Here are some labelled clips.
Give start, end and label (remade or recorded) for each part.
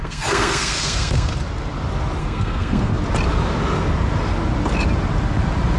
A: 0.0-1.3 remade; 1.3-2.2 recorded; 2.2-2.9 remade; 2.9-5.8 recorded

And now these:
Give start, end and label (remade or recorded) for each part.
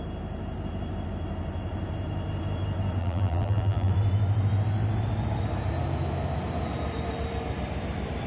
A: 0.0-3.0 recorded; 3.0-3.9 remade; 3.9-8.3 recorded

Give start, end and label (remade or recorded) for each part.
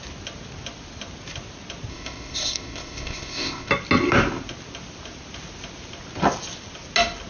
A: 0.0-1.9 recorded; 1.9-3.7 remade; 3.7-7.3 recorded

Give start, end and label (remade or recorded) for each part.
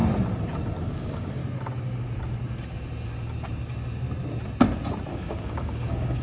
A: 0.0-0.8 recorded; 0.8-1.4 remade; 1.4-5.1 recorded; 5.1-6.2 remade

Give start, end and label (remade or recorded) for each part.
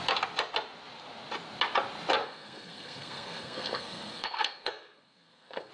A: 0.0-2.2 recorded; 2.2-5.7 remade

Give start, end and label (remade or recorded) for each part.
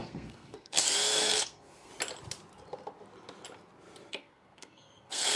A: 0.0-1.9 remade; 1.9-4.1 recorded; 4.1-5.4 remade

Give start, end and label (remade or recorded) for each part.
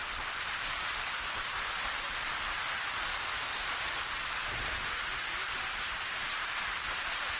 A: 0.0-7.4 remade